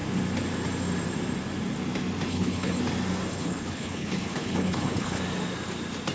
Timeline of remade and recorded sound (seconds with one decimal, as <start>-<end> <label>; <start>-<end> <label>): 0.0-2.3 recorded; 2.3-2.8 remade; 2.8-3.3 recorded; 3.3-5.2 remade; 5.2-6.1 recorded